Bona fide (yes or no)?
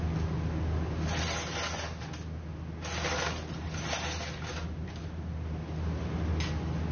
yes